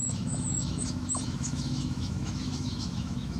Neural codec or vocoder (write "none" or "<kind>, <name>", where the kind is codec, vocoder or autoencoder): autoencoder, DAC-VAE